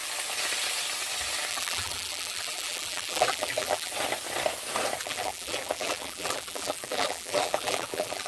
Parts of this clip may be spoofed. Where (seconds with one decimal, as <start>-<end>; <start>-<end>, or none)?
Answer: 1.5-3.9; 5.0-8.3